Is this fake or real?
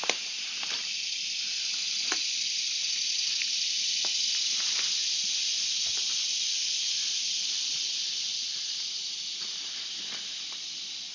fake